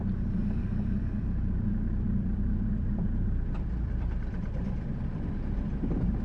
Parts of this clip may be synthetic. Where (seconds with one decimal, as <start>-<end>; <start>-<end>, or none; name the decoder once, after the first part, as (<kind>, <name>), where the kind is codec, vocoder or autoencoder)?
0.0-6.2 (vocoder, BigVGAN v2)